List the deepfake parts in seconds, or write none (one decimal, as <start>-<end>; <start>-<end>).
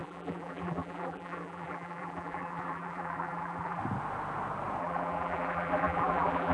0.0-3.8; 4.8-6.5